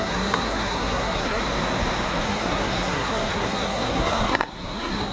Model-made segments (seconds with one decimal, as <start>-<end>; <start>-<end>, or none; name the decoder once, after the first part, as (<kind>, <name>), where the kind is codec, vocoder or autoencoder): 0.0-1.4 (codec, SNAC); 2.2-5.1